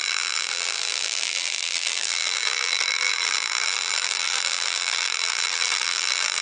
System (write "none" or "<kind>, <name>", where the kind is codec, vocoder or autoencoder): vocoder, BigVGAN v2